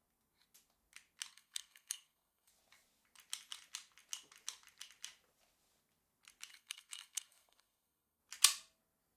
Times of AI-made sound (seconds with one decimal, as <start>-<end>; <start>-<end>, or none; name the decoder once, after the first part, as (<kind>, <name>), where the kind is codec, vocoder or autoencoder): 1.3-2.5 (codec, SNAC); 6.5-8.2